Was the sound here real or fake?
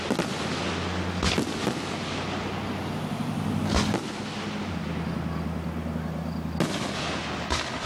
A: real